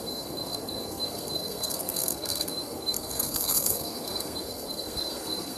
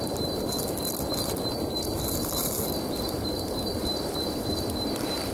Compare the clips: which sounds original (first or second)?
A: second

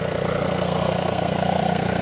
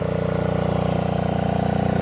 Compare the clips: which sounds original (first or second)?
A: second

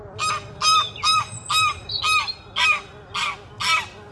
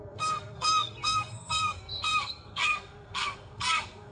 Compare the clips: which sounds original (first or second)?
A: first